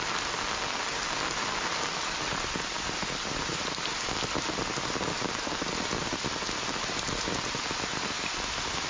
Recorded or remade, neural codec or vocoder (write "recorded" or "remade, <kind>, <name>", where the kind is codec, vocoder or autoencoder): recorded